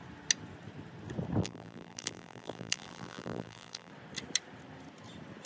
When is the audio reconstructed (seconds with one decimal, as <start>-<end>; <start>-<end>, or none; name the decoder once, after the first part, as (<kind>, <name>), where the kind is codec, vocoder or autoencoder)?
1.4-3.9 (vocoder, BigVGAN v2)